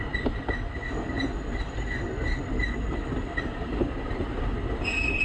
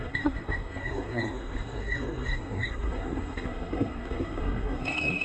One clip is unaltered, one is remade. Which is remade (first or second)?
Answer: second